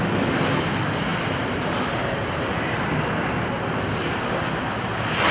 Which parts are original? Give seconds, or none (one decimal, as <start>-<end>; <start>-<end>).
0.0-5.3

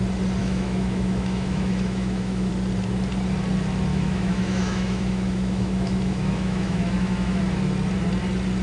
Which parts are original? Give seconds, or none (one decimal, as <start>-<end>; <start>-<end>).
0.0-0.4; 2.5-3.9; 7.4-8.6

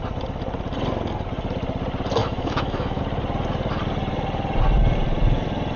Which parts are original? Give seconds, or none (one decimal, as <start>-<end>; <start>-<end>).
0.0-2.2; 3.0-5.8

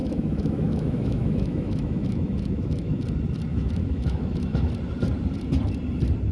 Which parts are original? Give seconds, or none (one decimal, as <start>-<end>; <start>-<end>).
3.0-3.5; 4.7-6.3